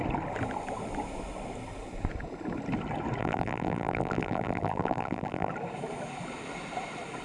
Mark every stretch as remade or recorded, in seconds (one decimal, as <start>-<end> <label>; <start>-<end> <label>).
0.0-3.2 recorded; 3.2-5.5 remade; 5.5-7.2 recorded